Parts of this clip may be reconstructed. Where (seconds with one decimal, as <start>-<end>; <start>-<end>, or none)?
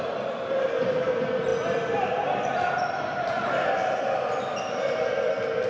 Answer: 0.0-5.7